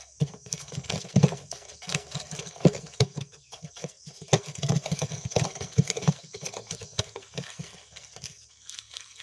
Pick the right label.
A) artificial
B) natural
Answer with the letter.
A